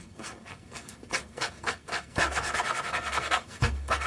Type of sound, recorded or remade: remade